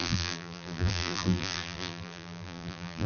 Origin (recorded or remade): remade